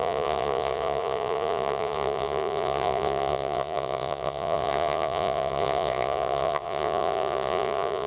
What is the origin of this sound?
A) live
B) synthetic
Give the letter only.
B